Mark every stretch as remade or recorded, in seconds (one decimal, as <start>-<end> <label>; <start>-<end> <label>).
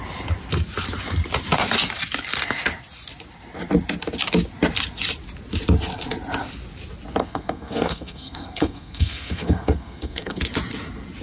0.0-7.2 recorded; 7.2-10.4 remade; 10.4-11.2 recorded